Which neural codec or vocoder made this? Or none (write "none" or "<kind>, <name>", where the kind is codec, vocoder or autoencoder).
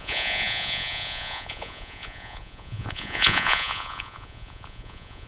vocoder, Vocos